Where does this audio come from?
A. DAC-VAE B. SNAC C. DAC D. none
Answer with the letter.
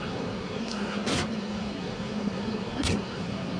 B